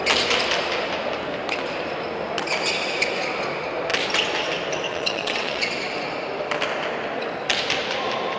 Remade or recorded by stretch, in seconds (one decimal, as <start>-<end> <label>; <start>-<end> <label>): 0.0-4.9 recorded; 4.9-5.7 remade; 5.7-8.4 recorded